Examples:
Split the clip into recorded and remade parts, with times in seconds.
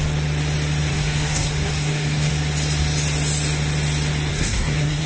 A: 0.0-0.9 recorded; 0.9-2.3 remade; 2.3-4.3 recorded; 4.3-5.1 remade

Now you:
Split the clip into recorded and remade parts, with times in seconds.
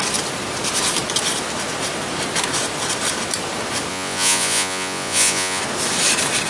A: 0.0-3.9 recorded; 3.9-5.6 remade; 5.6-6.5 recorded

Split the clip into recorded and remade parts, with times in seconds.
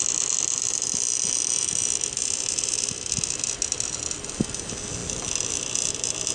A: 0.0-6.3 recorded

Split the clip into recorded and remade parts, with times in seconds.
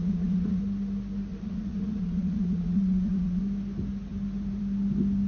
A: 0.0-0.6 remade; 0.6-1.3 recorded; 1.3-3.4 remade; 3.4-5.3 recorded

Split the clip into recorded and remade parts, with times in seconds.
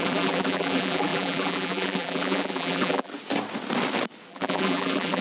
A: 0.0-3.1 remade; 3.1-4.3 recorded; 4.3-5.2 remade